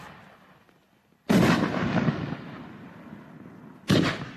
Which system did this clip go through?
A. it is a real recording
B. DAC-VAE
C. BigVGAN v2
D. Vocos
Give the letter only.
A